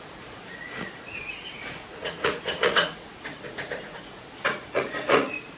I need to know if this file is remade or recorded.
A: remade